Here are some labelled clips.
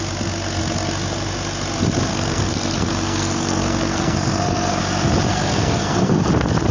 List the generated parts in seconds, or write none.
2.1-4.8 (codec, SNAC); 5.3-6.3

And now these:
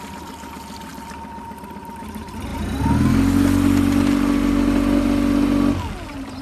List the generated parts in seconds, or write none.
none

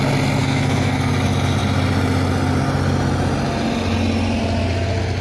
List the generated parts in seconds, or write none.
0.4-1.1 (codec, SNAC)

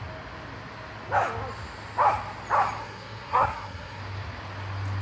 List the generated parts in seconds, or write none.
2.8-4.0 (codec, SNAC)